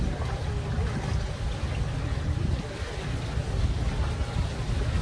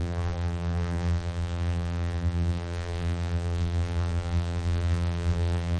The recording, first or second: first